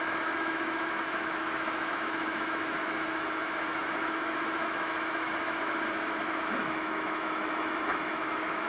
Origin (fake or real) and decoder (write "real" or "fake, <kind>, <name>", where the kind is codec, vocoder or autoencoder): fake, autoencoder, DAC-VAE